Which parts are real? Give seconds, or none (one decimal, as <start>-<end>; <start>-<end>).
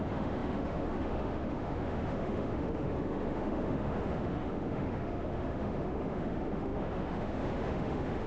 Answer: none